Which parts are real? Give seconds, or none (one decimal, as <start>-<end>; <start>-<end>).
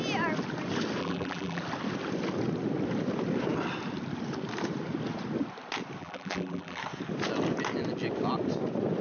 0.0-1.0; 1.6-6.0; 6.8-9.0